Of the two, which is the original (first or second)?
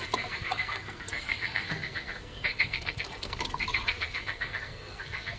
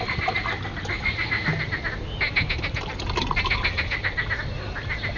second